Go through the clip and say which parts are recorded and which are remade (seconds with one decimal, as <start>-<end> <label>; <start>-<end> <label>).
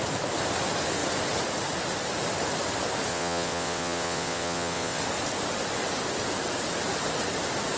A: 0.0-3.1 recorded; 3.1-5.0 remade; 5.0-7.8 recorded